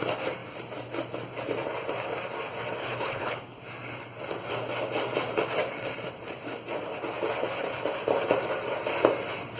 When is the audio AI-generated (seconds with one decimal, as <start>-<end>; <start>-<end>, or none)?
2.8-3.6

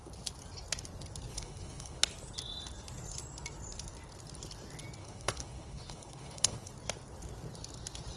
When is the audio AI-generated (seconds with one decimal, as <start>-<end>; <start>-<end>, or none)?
1.3-2.0; 5.0-6.7

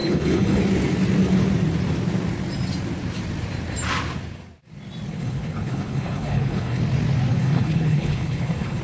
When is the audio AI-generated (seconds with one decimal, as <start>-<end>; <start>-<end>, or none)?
0.0-0.6; 5.1-6.8; 7.3-8.8